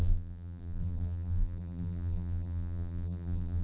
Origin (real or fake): fake